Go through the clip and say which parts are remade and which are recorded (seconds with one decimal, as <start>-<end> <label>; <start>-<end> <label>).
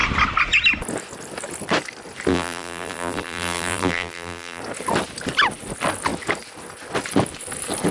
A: 0.0-2.3 recorded; 2.3-4.6 remade; 4.6-7.9 recorded